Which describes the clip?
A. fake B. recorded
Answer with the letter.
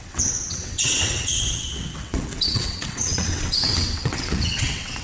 A